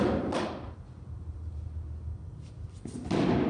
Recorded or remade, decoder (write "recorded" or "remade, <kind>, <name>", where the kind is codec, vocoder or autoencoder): recorded